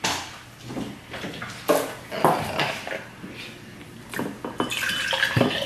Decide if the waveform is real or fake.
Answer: real